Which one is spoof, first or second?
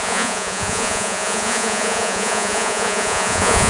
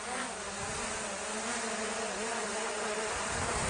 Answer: first